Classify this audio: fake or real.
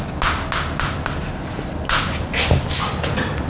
real